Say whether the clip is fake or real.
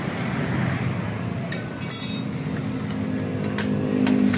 real